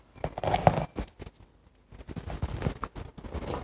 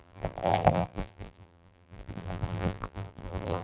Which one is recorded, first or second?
first